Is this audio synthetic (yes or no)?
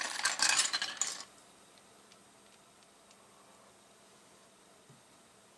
no